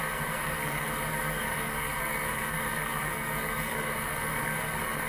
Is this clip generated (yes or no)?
yes